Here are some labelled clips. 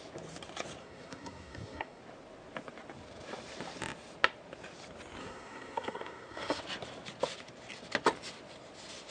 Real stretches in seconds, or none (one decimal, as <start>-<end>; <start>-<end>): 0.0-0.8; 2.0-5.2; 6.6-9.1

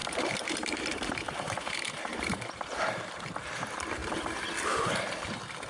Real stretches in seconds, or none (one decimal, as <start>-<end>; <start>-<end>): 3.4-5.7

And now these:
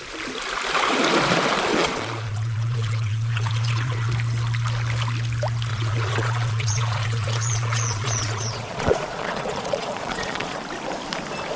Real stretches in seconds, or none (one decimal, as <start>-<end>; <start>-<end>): 0.0-1.7; 4.1-5.7; 10.6-11.6

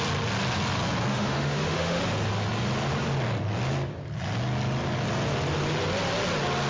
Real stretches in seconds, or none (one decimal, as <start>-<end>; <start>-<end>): 0.0-1.1; 2.0-6.7